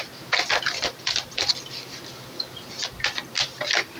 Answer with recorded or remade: recorded